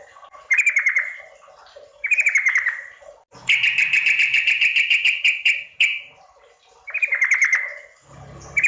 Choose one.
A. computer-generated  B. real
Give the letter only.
B